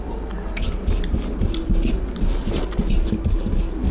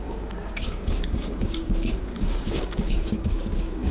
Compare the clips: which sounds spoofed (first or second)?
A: second